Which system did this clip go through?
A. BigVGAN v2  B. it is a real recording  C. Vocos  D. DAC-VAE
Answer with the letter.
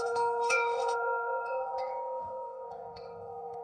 D